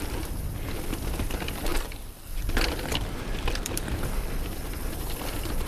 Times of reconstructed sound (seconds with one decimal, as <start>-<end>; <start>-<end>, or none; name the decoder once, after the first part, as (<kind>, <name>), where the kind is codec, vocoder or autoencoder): 1.7-4.6 (vocoder, BigVGAN v2)